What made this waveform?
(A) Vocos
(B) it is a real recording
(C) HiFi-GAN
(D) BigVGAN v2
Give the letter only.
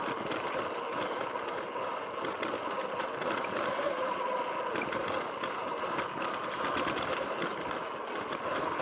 B